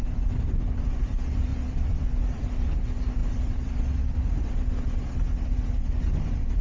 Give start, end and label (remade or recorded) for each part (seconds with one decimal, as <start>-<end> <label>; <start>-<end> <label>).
0.0-1.5 recorded; 1.5-2.4 remade; 2.4-3.2 recorded; 3.2-4.7 remade; 4.7-6.6 recorded